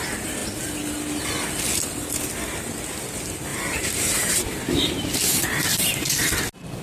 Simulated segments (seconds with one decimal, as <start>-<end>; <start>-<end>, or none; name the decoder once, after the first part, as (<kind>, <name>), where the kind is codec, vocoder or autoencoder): 3.5-6.3 (vocoder, BigVGAN v2)